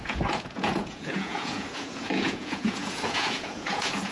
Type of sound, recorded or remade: remade